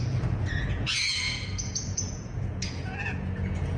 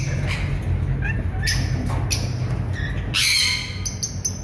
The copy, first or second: first